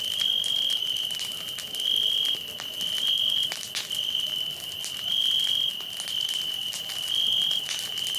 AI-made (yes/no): no